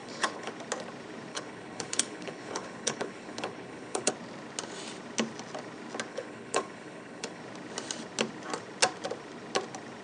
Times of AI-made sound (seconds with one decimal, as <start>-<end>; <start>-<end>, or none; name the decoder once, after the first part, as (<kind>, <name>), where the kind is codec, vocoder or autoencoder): 0.0-0.5 (codec, HILCodec); 1.3-4.1; 6.1-7.4